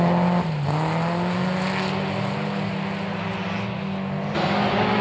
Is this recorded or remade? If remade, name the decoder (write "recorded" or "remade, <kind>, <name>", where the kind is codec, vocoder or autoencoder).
recorded